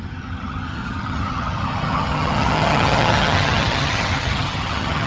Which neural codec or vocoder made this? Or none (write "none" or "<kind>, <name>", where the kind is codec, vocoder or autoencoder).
vocoder, HiFi-GAN